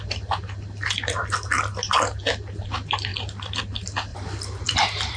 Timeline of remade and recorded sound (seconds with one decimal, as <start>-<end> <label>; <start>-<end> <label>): 0.0-4.1 recorded; 4.1-5.2 remade